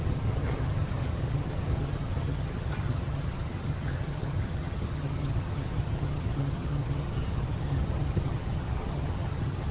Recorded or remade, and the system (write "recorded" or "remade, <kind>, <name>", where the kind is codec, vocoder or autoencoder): remade, vocoder, HiFi-GAN